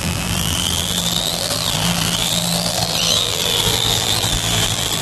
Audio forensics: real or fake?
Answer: fake